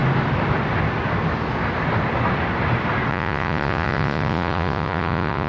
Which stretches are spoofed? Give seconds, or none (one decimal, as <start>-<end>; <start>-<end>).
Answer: 3.1-5.5